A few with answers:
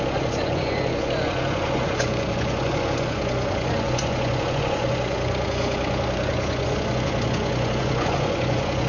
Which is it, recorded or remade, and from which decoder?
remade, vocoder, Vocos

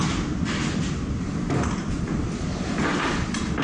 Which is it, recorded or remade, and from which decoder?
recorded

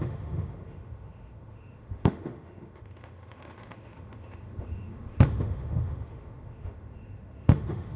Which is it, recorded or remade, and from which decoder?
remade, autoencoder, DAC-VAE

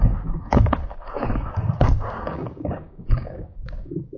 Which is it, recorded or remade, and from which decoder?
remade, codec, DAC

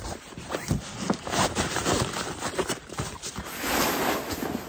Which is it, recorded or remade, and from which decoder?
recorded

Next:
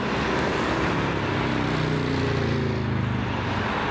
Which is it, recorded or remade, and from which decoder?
recorded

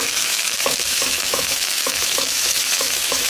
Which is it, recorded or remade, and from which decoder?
remade, autoencoder, DAC-VAE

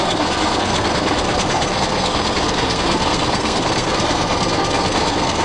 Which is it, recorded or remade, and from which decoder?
remade, codec, SNAC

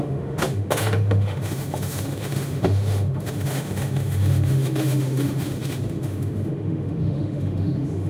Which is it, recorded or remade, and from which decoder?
remade, autoencoder, DAC-VAE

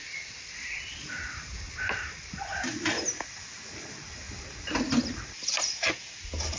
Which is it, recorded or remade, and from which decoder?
recorded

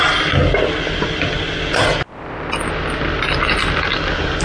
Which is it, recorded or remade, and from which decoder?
recorded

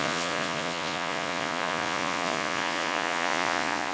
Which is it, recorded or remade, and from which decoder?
remade, vocoder, Vocos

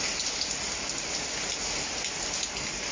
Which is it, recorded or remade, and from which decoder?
recorded